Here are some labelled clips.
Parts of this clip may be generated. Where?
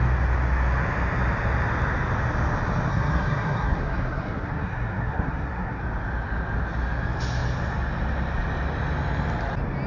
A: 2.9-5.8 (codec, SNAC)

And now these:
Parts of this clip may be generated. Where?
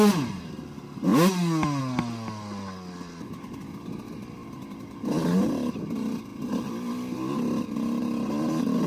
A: none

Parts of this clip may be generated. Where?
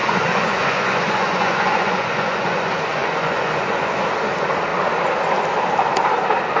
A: 0.0-3.9 (vocoder, Vocos)